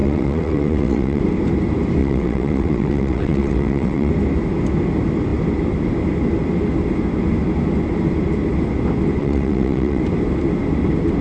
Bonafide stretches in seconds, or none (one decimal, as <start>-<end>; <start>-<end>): 1.2-2.0; 4.1-9.2; 10.0-11.2